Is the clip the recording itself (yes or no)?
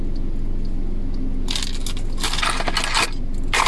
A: yes